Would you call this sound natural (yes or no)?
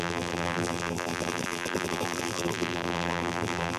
no